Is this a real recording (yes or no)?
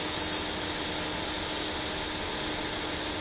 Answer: yes